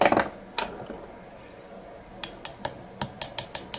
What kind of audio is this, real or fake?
real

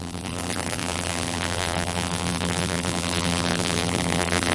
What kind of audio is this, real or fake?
fake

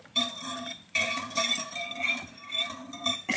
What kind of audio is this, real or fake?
fake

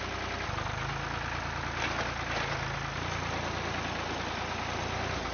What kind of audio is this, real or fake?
real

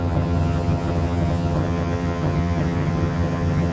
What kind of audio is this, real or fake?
fake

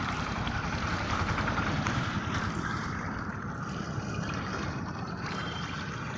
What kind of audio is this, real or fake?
fake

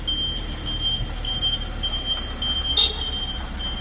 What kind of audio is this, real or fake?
real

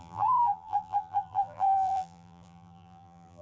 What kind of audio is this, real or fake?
fake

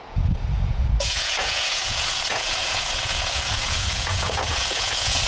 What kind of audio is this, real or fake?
fake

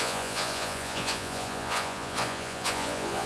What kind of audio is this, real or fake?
fake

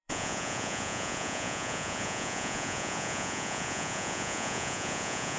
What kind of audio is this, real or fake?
fake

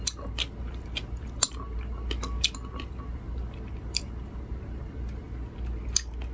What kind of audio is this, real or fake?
real